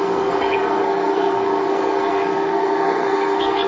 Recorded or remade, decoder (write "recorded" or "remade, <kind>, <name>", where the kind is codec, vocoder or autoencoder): remade, codec, SNAC